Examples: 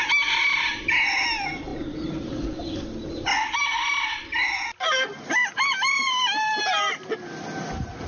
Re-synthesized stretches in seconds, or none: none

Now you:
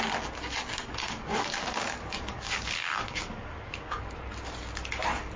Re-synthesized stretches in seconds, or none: 1.0-4.0 (codec, DAC)

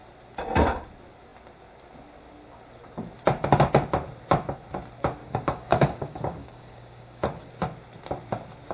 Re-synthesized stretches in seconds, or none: 5.2-7.5 (codec, DAC)

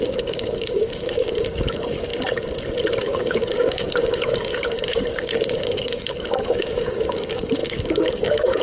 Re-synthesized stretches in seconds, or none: 0.0-2.1 (codec, DAC); 3.0-8.6

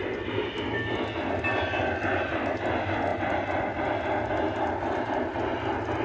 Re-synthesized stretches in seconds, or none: none